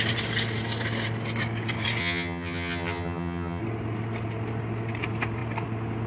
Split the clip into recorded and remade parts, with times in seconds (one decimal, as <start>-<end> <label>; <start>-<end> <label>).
0.0-2.0 recorded; 2.0-3.6 remade; 3.6-6.1 recorded